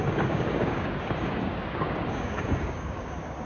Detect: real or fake fake